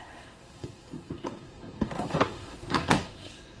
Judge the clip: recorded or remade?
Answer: remade